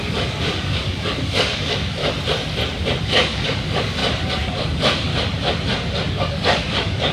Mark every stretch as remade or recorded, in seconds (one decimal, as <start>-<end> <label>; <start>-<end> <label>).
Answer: 0.0-2.0 remade; 2.0-3.0 recorded; 3.0-4.0 remade; 4.0-4.6 recorded; 4.6-5.1 remade; 5.1-6.1 recorded; 6.1-7.1 remade